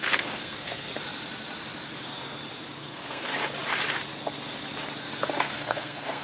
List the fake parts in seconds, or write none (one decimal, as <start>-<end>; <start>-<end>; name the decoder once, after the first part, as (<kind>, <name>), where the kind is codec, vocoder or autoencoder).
0.0-0.9 (codec, SNAC); 2.8-3.3; 5.4-6.2